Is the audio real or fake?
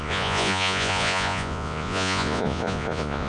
fake